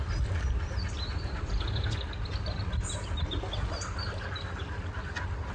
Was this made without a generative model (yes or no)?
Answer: yes